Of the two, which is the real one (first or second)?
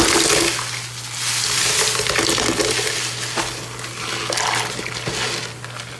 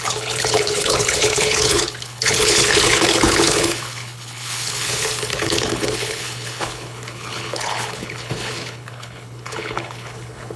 first